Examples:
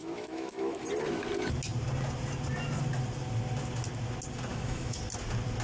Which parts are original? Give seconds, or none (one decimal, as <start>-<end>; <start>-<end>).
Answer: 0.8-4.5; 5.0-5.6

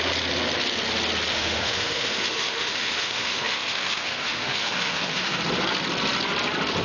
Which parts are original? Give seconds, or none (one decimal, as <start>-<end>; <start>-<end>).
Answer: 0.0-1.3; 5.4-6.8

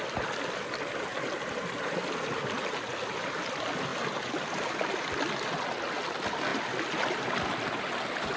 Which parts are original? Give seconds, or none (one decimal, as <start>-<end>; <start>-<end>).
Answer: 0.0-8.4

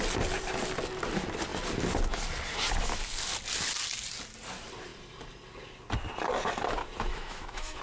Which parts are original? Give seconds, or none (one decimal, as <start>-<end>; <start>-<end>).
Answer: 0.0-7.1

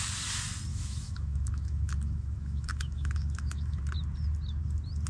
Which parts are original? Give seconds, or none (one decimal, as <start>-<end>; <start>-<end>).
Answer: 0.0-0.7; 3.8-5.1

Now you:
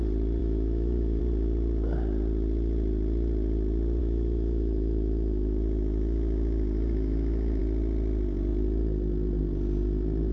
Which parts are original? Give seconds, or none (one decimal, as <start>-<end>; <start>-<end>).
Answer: 0.0-0.4; 1.2-4.0; 7.6-10.3